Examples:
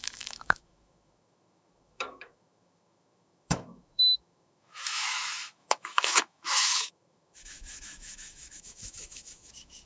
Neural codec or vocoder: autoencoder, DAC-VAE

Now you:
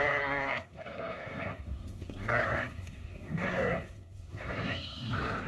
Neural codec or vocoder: codec, SNAC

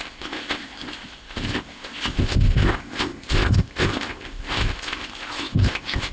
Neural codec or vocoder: codec, ZipCodec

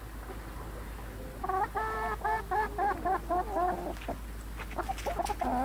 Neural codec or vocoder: none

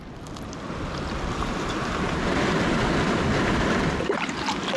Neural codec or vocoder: none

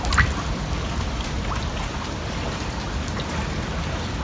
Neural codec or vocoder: none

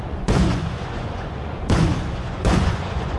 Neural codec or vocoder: vocoder, Vocos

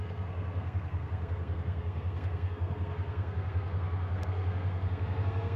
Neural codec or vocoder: codec, SNAC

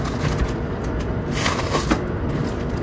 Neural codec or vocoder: none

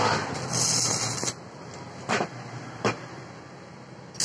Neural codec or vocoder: none